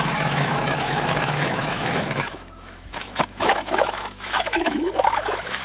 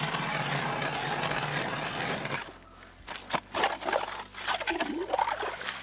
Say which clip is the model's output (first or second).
first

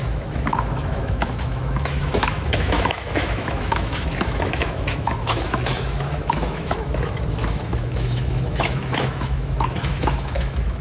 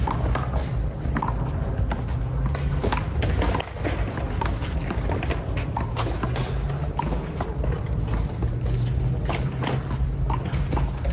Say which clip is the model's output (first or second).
first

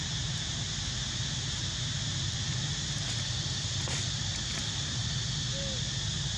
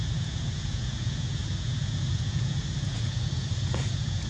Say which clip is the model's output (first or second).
second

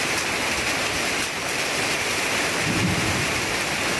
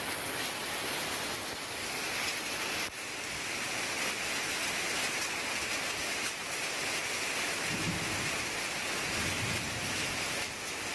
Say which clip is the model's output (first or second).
first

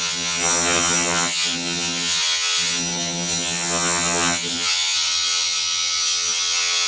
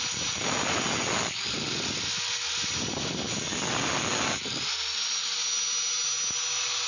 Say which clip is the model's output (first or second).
first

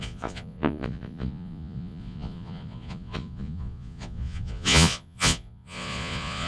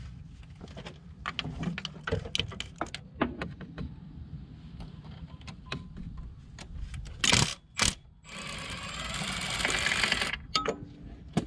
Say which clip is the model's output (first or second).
first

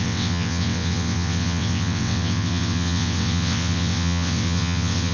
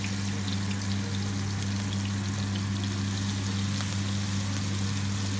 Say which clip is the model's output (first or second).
first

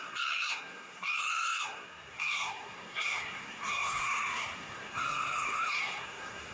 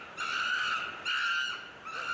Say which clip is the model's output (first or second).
first